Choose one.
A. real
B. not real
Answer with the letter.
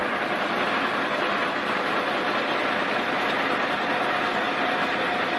A